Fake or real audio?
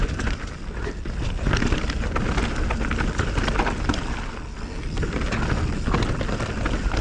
real